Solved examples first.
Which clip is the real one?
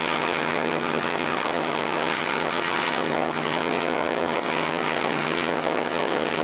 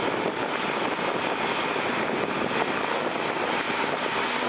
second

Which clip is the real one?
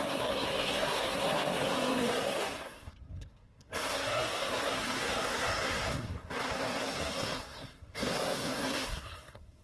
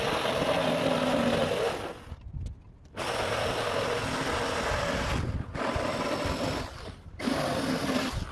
second